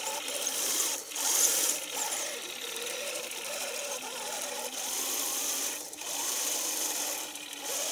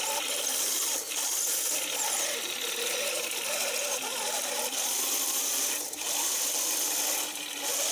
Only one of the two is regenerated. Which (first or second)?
first